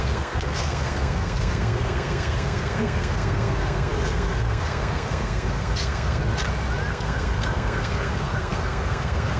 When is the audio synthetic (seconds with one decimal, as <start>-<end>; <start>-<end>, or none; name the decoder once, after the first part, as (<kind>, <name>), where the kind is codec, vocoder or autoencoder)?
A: 0.0-6.2 (codec, SNAC); 6.9-9.4